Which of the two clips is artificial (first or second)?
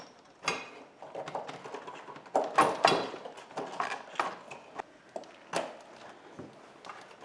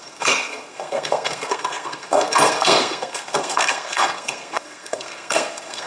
second